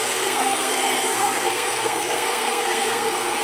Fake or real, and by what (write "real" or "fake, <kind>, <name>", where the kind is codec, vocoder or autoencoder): fake, codec, SNAC